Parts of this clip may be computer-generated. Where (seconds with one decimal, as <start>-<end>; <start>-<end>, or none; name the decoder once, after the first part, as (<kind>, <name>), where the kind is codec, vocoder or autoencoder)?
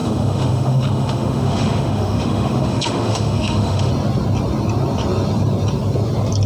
0.0-3.9 (autoencoder, DAC-VAE)